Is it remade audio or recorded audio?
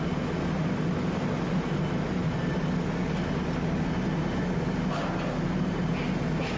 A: recorded